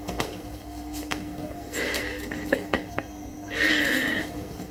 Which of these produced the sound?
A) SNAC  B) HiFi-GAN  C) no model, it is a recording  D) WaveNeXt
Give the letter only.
A